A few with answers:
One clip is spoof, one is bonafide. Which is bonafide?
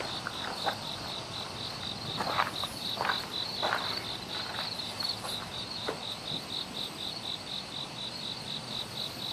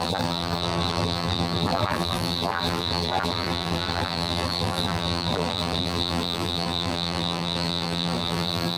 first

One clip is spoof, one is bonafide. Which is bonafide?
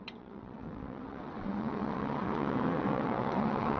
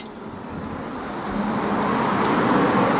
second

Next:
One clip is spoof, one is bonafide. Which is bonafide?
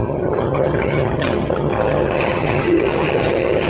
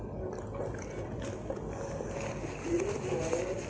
second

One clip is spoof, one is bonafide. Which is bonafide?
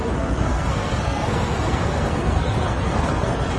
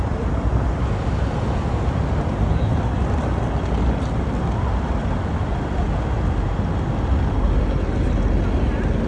second